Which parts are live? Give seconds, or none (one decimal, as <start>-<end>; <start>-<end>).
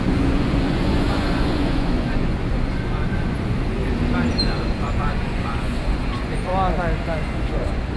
3.8-4.4; 6.5-7.2